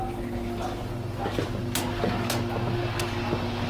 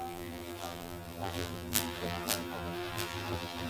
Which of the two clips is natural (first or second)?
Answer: first